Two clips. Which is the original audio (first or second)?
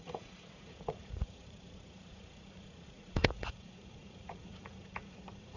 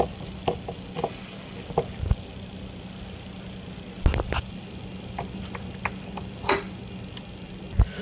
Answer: second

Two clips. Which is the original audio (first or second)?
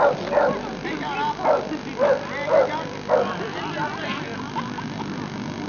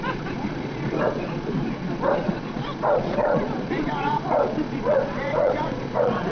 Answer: first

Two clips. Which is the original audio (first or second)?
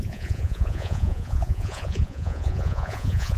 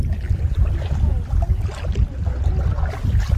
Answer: second